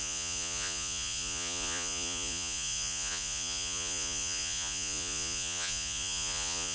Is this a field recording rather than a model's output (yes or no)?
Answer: no